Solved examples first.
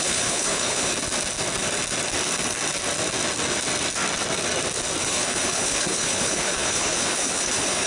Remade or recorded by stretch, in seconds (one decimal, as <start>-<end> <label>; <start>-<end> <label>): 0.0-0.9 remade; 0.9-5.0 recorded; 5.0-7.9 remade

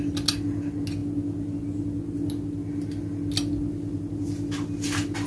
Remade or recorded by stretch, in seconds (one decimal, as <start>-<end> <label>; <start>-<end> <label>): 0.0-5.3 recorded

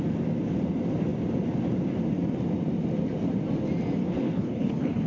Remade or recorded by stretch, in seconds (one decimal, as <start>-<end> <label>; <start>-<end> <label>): 0.0-4.0 recorded; 4.0-5.1 remade